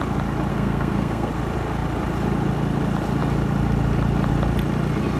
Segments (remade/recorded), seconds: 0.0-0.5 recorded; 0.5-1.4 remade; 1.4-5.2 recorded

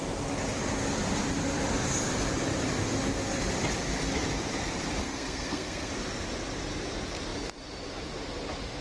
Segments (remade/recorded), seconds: 0.0-5.0 recorded; 5.0-5.9 remade; 5.9-8.8 recorded

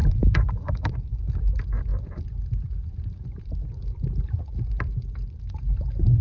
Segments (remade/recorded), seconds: 0.0-1.4 remade; 1.4-6.2 recorded

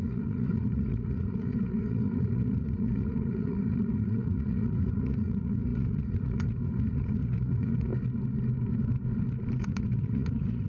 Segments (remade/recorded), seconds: 0.0-7.9 remade; 7.9-9.6 recorded; 9.6-10.7 remade

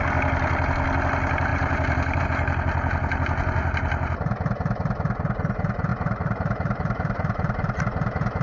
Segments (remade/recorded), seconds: 0.0-1.5 recorded; 1.5-2.2 remade; 2.2-5.9 recorded; 5.9-7.8 remade; 7.8-8.4 recorded

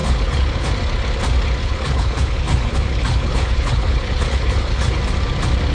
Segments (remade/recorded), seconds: 0.0-0.7 remade; 0.7-1.6 recorded; 1.6-5.0 remade; 5.0-5.7 recorded

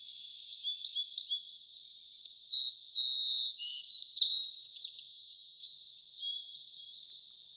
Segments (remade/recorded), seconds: 0.0-5.1 recorded; 5.1-5.6 remade; 5.6-7.6 recorded